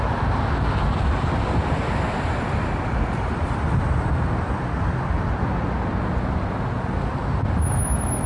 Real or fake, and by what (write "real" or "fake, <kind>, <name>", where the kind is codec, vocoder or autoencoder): real